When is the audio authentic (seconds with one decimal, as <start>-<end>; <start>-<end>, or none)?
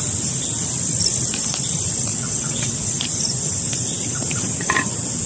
0.0-2.1; 2.9-5.3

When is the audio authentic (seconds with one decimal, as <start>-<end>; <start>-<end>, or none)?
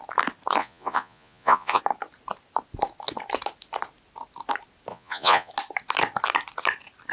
0.0-0.6; 1.8-4.9; 5.5-7.1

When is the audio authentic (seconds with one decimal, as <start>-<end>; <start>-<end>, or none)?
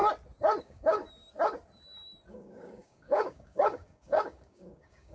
0.0-0.6; 1.0-2.3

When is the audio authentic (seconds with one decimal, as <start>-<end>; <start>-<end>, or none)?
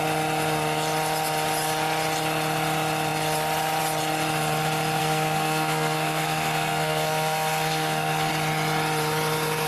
0.0-5.0; 8.3-9.7